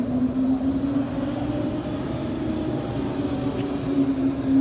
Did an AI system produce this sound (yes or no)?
no